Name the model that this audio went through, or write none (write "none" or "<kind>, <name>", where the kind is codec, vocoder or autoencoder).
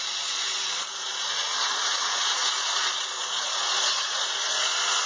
vocoder, Vocos